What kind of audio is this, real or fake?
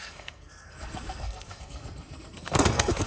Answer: fake